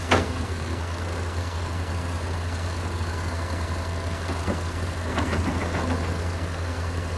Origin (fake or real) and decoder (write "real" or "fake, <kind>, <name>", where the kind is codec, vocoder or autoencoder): fake, codec, SNAC